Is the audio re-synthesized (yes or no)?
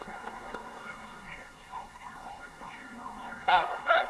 yes